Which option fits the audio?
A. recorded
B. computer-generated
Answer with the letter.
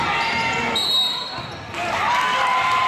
A